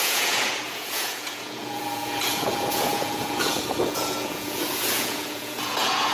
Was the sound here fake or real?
fake